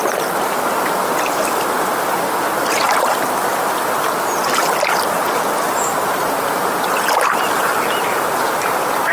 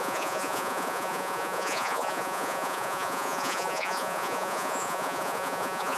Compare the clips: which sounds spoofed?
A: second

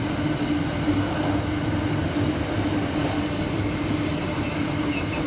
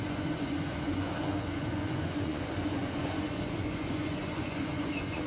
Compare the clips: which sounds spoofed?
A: second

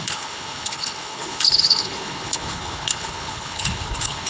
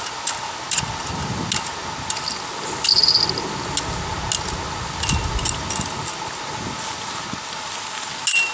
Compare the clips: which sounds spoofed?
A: first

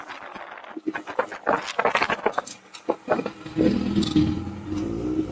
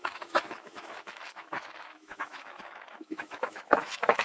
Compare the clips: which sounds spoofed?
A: second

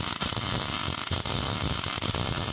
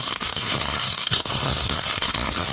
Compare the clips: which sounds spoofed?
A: second